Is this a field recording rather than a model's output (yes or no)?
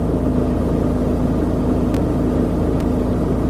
yes